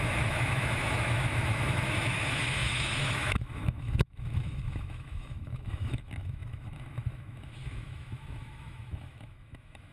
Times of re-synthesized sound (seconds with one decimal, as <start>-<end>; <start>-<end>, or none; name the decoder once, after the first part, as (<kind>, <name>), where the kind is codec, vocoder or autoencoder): 0.0-9.9 (autoencoder, DAC-VAE)